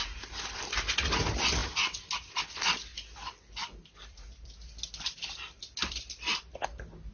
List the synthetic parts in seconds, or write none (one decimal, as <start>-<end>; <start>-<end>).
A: 2.9-6.5